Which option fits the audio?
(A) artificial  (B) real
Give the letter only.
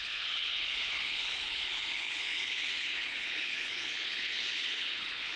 A